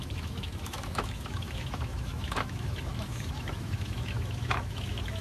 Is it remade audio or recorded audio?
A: remade